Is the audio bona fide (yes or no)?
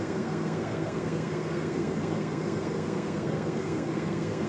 no